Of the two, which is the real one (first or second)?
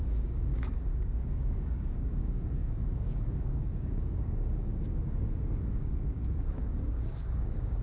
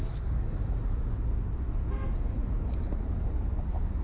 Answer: second